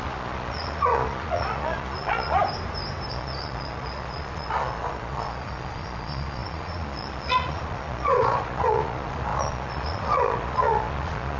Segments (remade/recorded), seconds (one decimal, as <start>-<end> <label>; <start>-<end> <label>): 0.0-2.4 remade; 2.4-3.1 recorded; 3.1-11.4 remade